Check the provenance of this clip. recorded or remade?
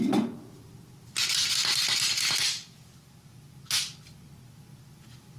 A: recorded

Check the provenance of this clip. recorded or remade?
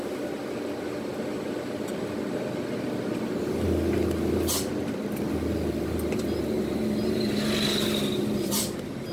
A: recorded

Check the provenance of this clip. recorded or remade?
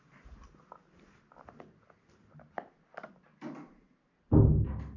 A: recorded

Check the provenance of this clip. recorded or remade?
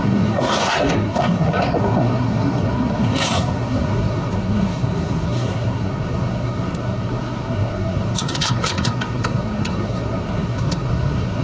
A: remade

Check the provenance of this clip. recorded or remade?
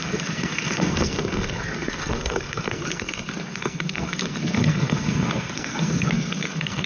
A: remade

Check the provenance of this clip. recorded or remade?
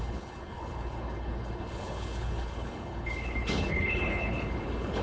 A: remade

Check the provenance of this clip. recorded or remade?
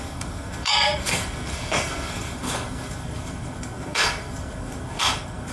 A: remade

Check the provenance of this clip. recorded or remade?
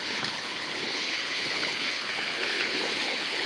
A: remade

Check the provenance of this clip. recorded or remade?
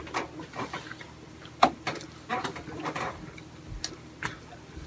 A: recorded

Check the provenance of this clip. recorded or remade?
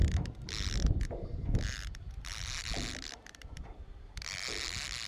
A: remade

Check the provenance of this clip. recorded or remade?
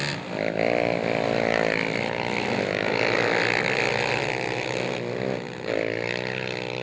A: recorded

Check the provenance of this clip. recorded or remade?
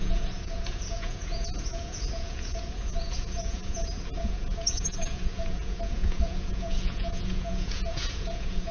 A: remade